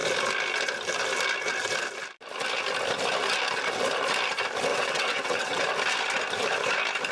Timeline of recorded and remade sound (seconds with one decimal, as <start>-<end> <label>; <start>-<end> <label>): 0.0-4.7 recorded; 4.7-5.6 remade; 5.6-7.1 recorded